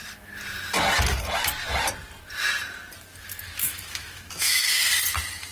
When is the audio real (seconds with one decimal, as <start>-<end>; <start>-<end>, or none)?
0.0-3.6; 4.8-5.5